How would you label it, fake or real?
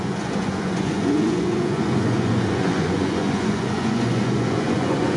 fake